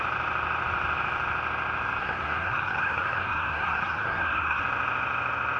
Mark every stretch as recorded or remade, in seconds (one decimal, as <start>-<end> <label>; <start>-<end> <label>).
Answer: 0.0-2.0 recorded; 2.0-4.6 remade; 4.6-5.6 recorded